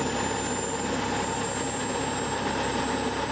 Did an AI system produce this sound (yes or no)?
no